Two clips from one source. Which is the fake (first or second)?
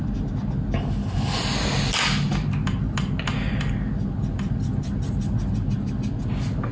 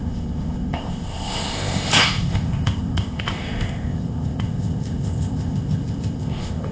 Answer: second